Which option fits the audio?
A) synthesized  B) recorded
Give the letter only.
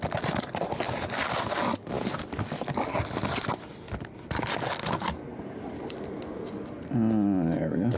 B